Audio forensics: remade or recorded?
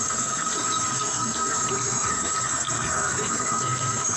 remade